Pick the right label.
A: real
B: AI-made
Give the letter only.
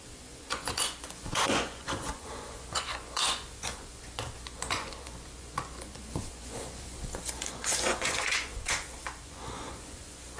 B